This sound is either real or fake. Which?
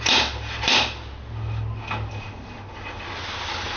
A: real